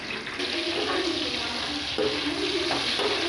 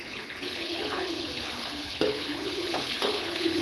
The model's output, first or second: second